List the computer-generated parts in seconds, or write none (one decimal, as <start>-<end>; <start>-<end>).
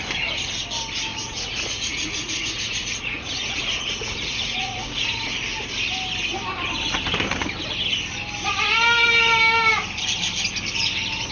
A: 1.1-5.3